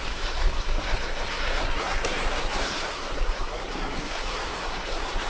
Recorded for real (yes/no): no